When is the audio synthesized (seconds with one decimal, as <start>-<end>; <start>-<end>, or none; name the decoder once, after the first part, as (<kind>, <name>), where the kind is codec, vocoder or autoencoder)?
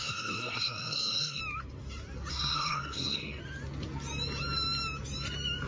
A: 0.0-1.4 (codec, SNAC); 2.3-3.4